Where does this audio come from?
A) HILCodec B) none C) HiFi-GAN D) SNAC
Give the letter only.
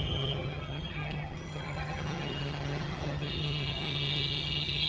C